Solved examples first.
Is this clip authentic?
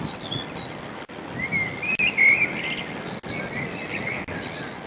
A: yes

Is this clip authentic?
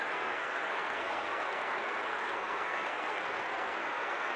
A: no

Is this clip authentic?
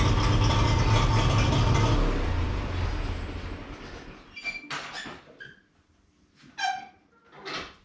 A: yes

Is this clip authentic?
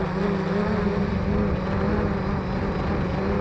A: yes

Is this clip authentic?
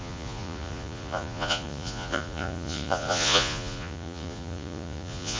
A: no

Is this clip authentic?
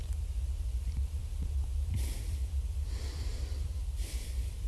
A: no